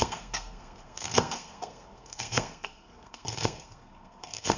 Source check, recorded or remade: remade